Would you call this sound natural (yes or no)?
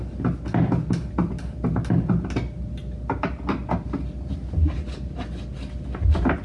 yes